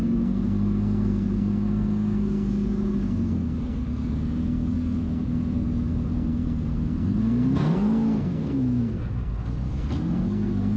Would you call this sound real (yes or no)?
no